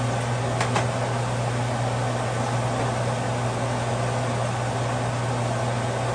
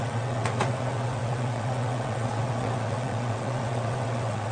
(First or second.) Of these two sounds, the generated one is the second